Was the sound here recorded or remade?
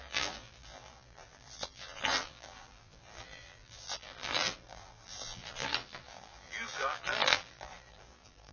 remade